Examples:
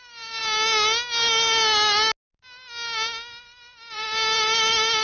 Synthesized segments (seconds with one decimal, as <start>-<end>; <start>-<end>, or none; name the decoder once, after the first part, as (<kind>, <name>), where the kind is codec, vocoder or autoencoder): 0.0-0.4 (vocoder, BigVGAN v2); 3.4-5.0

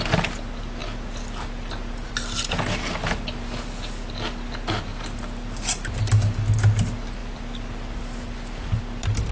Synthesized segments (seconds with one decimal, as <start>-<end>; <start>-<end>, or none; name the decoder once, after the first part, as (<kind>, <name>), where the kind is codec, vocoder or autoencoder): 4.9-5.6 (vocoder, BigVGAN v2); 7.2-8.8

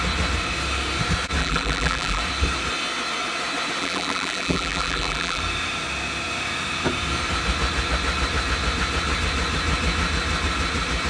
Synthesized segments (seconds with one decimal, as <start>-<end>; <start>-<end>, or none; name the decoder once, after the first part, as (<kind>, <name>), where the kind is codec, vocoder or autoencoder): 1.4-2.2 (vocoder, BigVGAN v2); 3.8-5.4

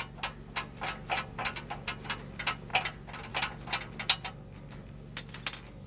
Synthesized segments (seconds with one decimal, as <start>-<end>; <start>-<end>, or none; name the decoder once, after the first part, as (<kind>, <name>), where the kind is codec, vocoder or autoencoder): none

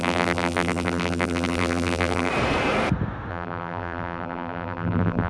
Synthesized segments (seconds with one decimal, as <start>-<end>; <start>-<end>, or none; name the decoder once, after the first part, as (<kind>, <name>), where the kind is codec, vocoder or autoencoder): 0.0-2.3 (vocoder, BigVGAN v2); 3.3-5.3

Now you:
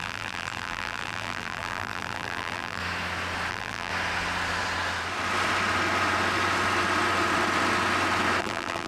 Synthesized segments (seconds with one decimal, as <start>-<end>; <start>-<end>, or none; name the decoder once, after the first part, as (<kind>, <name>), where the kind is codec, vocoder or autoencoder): 0.0-2.8 (vocoder, BigVGAN v2); 3.5-3.9; 8.4-8.9